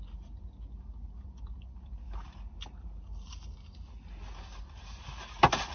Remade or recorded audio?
recorded